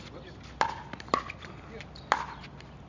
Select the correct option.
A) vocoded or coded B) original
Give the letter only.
B